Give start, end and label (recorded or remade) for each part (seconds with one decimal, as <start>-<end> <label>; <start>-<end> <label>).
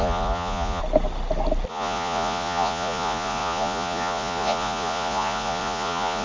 0.0-0.8 remade; 0.8-1.7 recorded; 1.7-6.2 remade